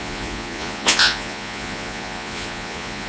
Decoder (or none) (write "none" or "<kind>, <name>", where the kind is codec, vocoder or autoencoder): vocoder, Vocos